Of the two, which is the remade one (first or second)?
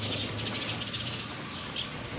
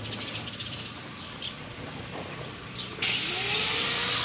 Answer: second